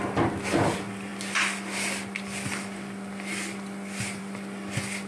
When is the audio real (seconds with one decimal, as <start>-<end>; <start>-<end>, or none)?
0.0-5.1